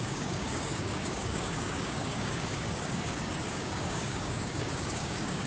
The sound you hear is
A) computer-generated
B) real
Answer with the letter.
A